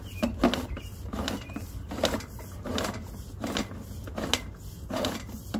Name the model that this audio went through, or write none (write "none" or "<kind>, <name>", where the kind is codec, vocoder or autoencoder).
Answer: none